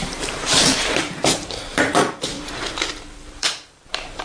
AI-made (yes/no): yes